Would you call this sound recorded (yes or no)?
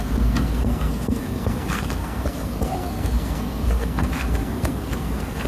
no